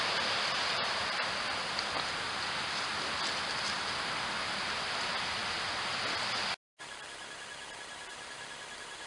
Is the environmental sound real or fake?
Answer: real